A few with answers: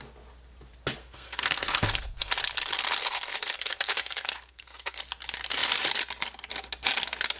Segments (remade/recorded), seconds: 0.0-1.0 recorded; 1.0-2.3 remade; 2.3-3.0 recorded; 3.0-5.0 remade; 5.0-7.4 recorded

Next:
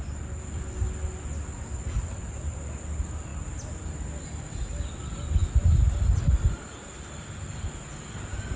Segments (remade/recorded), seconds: 0.0-8.6 recorded

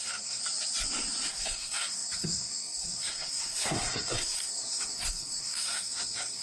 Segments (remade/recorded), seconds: 0.0-0.4 remade; 0.4-1.3 recorded; 1.3-6.4 remade

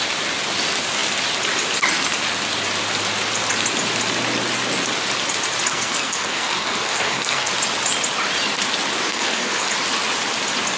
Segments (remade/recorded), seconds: 0.0-5.7 recorded; 5.7-7.5 remade; 7.5-9.1 recorded; 9.1-9.7 remade; 9.7-10.8 recorded